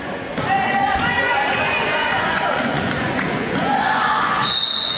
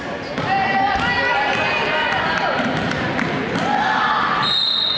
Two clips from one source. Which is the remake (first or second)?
first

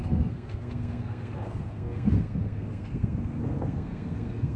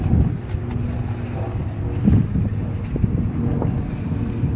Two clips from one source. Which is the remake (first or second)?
first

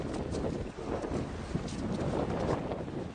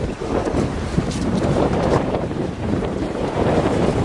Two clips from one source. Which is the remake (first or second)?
second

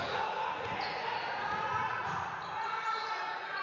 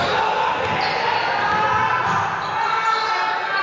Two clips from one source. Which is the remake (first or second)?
first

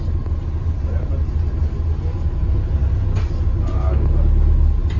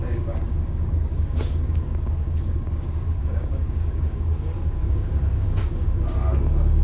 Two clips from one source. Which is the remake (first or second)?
second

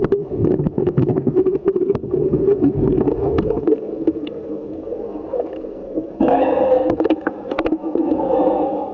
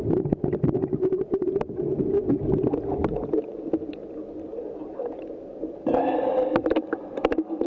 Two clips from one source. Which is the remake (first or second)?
first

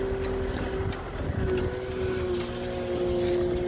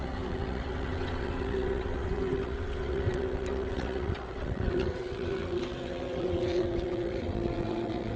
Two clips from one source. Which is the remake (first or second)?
second